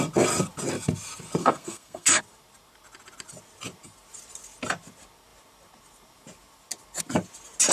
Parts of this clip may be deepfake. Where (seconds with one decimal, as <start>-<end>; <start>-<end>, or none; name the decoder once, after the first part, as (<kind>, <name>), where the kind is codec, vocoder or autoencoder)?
1.4-2.2 (codec, SNAC)